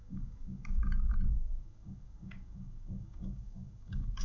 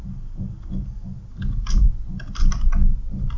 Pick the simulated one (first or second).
first